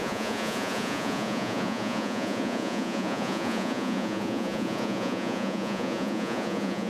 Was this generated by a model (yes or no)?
yes